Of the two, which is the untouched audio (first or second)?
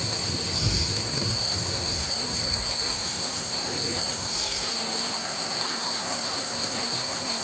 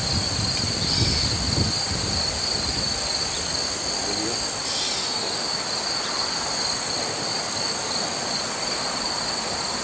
second